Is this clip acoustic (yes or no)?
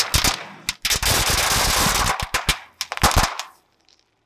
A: yes